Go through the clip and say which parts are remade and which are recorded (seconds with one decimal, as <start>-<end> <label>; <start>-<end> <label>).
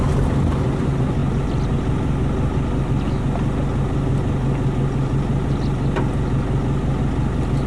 0.0-7.7 recorded